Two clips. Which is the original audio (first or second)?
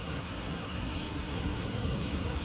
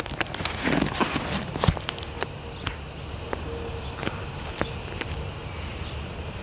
second